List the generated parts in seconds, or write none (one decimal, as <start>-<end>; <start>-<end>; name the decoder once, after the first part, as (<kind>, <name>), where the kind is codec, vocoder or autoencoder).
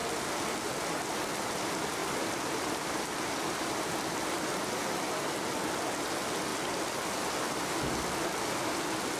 2.0-5.1 (vocoder, BigVGAN v2)